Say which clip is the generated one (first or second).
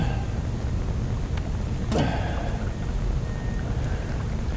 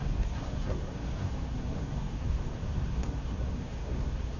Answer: second